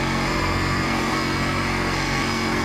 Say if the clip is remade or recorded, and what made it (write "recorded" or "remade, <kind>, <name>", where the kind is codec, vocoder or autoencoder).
remade, codec, SNAC